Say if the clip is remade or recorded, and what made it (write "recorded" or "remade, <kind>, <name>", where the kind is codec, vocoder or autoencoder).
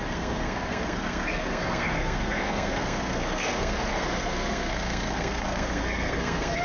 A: remade, codec, SNAC